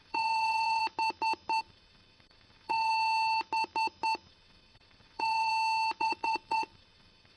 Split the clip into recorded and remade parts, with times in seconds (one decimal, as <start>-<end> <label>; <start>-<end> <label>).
0.0-0.8 remade; 0.8-1.6 recorded; 1.6-2.9 remade; 2.9-4.3 recorded; 4.3-5.5 remade; 5.5-6.0 recorded; 6.0-7.4 remade